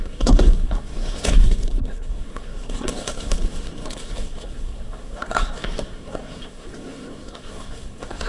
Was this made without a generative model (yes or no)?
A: no